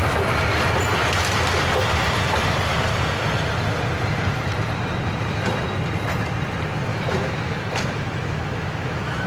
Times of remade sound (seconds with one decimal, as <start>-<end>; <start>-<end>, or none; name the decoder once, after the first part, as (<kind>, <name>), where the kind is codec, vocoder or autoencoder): 6.9-9.3 (autoencoder, DAC-VAE)